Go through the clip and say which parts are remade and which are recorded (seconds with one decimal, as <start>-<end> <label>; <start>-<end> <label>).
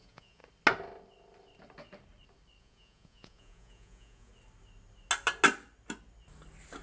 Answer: 0.0-0.4 remade; 0.4-2.6 recorded; 2.6-4.3 remade; 4.3-6.8 recorded